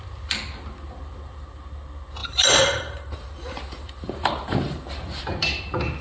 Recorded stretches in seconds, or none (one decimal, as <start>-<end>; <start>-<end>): 0.0-2.2; 5.2-6.0